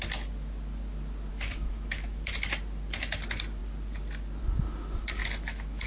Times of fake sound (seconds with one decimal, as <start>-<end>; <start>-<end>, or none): 1.3-2.3; 5.2-5.9